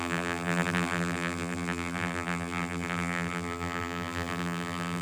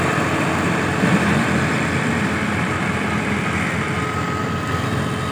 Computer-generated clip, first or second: first